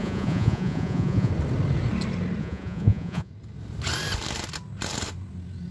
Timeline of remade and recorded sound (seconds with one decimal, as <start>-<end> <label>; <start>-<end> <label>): 0.0-1.3 remade; 1.3-2.4 recorded; 2.4-3.3 remade; 3.3-5.7 recorded